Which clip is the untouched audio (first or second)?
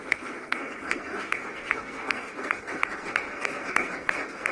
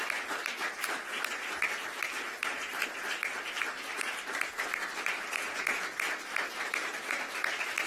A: second